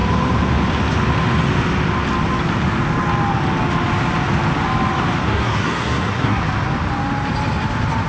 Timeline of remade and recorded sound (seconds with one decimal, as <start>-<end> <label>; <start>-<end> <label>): 0.0-5.2 recorded; 5.2-6.4 remade; 6.4-8.1 recorded